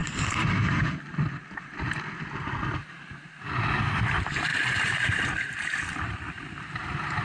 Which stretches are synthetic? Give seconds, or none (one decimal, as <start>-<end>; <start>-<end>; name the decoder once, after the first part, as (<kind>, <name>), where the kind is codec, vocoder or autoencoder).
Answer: 3.9-7.2 (vocoder, BigVGAN v2)